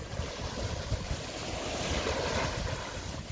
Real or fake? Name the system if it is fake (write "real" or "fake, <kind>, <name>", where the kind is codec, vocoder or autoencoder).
real